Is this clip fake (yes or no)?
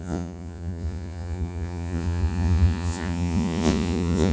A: yes